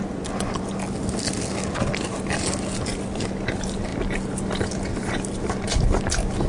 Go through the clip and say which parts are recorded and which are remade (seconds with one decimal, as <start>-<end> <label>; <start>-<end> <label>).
0.0-6.5 recorded